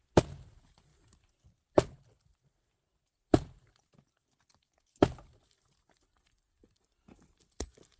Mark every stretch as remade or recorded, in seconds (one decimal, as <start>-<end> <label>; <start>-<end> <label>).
0.0-8.0 recorded